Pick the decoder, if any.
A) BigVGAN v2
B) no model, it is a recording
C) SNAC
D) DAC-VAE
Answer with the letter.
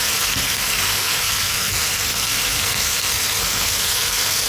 C